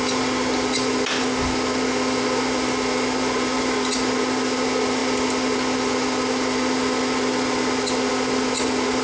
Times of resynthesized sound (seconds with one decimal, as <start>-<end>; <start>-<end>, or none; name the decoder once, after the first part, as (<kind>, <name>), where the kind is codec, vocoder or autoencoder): none